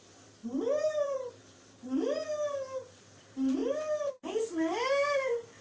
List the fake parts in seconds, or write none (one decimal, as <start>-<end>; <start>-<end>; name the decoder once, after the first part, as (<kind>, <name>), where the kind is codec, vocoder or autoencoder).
0.0-5.6 (vocoder, BigVGAN v2)